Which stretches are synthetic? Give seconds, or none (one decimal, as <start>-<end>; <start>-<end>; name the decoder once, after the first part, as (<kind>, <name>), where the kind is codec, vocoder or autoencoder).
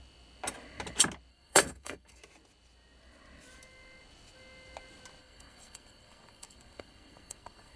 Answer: 1.3-2.2 (codec, SNAC); 5.2-7.8